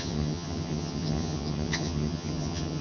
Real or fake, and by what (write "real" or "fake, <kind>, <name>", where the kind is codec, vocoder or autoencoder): fake, vocoder, HiFi-GAN